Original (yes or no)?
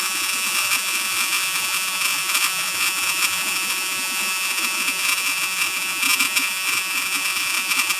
no